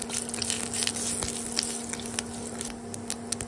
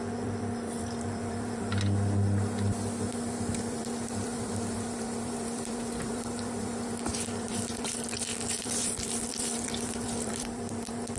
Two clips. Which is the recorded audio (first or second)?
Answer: first